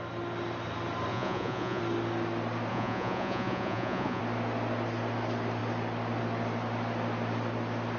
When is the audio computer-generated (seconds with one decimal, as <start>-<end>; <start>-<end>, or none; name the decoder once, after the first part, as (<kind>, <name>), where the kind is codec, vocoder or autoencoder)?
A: 1.1-1.8 (vocoder, Vocos); 2.7-4.2